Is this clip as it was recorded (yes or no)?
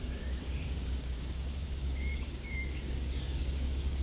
no